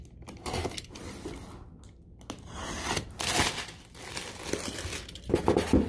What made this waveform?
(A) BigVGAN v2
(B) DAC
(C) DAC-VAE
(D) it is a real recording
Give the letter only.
D